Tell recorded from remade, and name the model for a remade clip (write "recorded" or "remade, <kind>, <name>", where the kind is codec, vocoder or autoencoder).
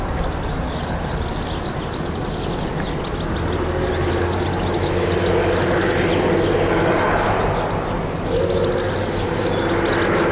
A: recorded